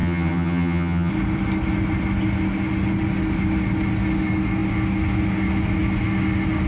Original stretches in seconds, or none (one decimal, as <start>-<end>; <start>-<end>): 1.1-6.7